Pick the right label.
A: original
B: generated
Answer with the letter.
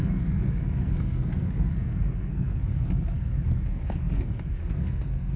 B